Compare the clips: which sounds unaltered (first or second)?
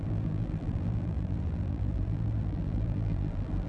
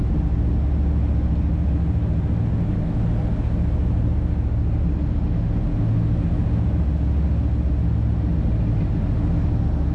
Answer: second